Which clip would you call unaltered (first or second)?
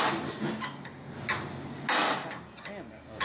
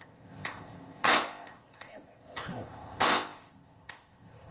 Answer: first